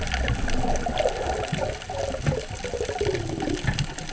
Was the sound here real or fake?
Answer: real